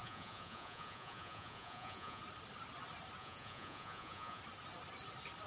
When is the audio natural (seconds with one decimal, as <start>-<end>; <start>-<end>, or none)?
2.2-3.2; 4.4-5.5